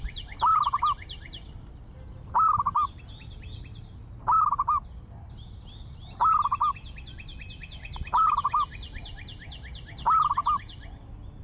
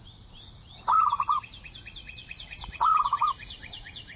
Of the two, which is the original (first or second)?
first